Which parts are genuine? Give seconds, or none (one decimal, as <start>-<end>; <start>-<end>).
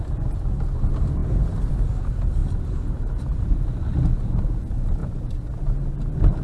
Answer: 0.0-6.4